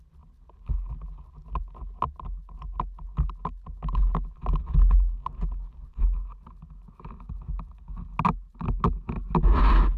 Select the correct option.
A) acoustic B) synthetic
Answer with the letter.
A